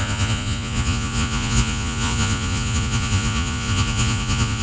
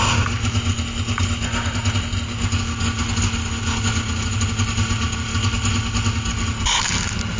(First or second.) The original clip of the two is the second